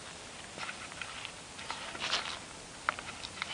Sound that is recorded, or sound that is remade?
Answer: recorded